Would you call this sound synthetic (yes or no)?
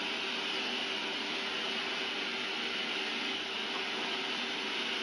no